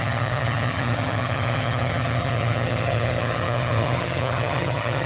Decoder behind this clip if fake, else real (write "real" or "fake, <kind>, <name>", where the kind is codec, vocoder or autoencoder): fake, vocoder, HiFi-GAN